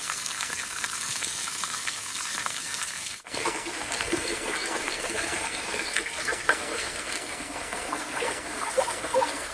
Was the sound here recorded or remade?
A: remade